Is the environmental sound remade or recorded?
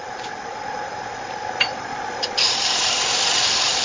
remade